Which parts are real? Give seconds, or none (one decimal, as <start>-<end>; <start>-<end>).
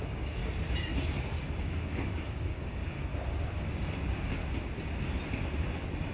0.4-1.6; 3.1-3.6; 4.4-6.1